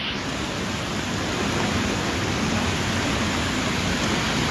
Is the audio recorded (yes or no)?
yes